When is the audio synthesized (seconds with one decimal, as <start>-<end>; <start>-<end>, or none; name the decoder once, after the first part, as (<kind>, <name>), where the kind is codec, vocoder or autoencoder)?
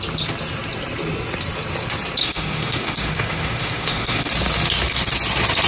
2.2-4.3 (autoencoder, DAC-VAE)